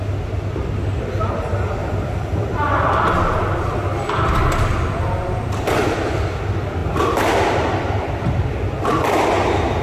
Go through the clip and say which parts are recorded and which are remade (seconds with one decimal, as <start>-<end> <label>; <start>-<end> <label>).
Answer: 0.0-1.8 recorded; 1.8-2.8 remade; 2.8-9.8 recorded